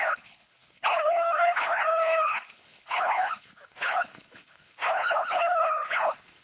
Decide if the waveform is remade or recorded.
remade